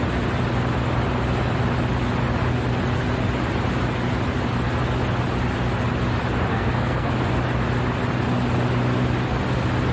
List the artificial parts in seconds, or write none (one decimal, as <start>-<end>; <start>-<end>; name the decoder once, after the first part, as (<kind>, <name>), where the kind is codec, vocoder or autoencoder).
6.5-7.1 (codec, SNAC)